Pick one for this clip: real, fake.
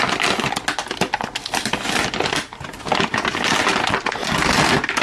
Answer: real